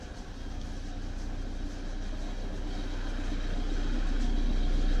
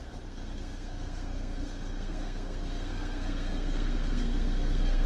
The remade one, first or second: second